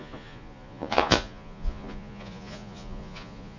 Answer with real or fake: fake